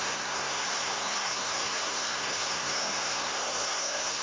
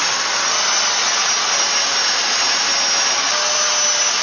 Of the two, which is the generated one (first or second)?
first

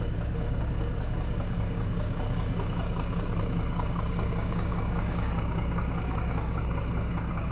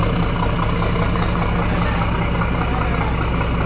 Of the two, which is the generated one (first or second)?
first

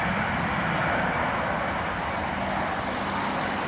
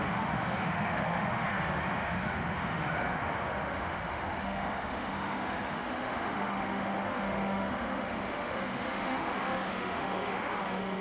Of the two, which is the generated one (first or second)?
second